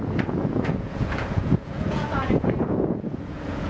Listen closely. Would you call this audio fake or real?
fake